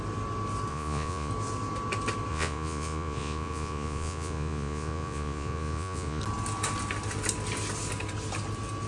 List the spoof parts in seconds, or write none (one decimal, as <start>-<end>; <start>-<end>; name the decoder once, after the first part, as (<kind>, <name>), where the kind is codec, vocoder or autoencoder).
0.7-1.3 (vocoder, Vocos); 2.3-6.2